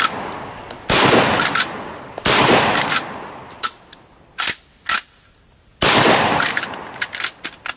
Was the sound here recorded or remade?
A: recorded